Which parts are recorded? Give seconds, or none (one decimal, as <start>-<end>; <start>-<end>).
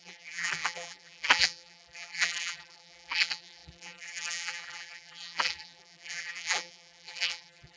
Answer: none